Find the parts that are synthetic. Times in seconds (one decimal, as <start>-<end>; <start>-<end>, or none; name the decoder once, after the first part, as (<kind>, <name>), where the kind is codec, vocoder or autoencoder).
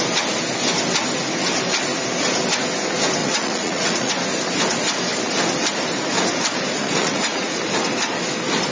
3.2-4.1 (vocoder, Vocos); 6.8-7.6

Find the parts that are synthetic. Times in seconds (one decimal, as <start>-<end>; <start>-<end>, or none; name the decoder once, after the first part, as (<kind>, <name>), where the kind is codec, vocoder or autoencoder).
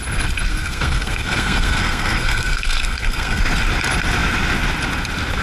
0.5-3.4 (codec, SNAC)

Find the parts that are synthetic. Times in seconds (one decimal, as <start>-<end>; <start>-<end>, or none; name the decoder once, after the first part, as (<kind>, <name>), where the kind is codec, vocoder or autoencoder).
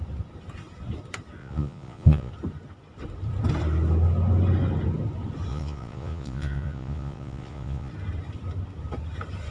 1.4-2.3 (vocoder, Vocos); 5.5-7.9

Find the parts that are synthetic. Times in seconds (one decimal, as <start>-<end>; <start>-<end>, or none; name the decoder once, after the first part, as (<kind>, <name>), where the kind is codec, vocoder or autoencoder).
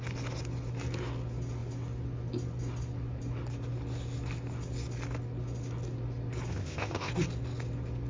6.5-7.1 (codec, ZipCodec)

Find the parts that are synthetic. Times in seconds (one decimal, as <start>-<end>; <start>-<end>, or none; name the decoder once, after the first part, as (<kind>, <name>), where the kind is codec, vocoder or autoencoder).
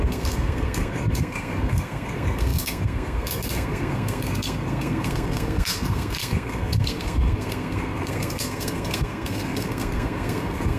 0.0-10.8 (codec, SNAC)